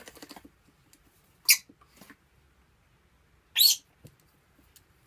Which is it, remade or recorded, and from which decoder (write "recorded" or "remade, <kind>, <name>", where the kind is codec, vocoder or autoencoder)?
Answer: recorded